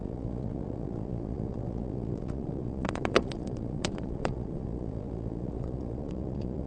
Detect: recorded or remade remade